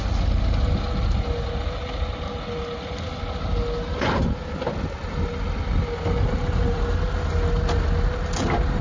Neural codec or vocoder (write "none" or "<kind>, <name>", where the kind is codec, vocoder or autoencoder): none